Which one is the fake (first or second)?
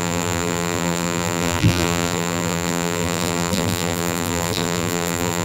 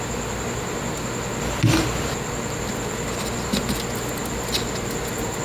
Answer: first